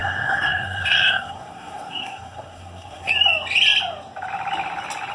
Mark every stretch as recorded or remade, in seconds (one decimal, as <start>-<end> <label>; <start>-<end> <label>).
0.0-3.1 remade; 3.1-5.1 recorded